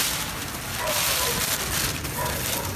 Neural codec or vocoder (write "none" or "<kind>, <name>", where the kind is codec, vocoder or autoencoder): none